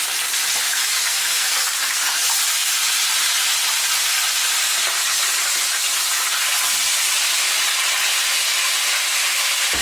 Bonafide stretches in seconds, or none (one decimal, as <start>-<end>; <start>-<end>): 0.0-0.7; 2.2-9.8